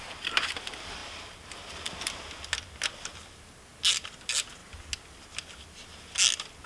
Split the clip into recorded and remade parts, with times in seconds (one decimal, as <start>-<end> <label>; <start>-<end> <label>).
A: 0.0-6.7 recorded